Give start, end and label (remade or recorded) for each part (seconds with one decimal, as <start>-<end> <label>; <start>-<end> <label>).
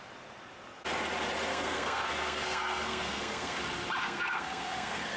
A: 0.0-1.5 recorded; 1.5-3.6 remade; 3.6-4.0 recorded; 4.0-5.2 remade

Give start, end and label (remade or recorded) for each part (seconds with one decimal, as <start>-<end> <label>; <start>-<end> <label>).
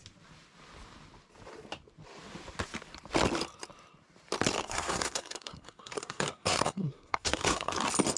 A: 0.0-4.6 recorded; 4.6-7.7 remade; 7.7-8.2 recorded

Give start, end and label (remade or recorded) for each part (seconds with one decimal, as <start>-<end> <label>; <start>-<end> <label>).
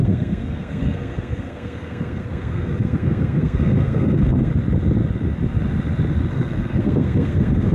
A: 0.0-4.5 remade; 4.5-6.3 recorded; 6.3-7.7 remade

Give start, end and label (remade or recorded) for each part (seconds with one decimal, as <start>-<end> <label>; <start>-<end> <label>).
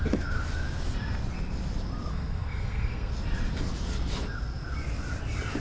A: 0.0-2.1 recorded; 2.1-3.1 remade; 3.1-5.6 recorded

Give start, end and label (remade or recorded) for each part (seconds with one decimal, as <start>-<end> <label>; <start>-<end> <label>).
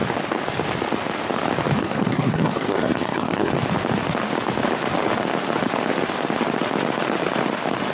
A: 0.0-1.8 recorded; 1.8-3.5 remade; 3.5-7.9 recorded